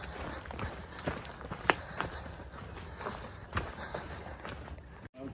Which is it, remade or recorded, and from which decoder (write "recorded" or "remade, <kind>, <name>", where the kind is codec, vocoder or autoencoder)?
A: recorded